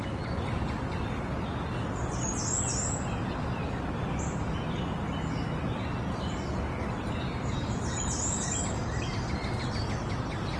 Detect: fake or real real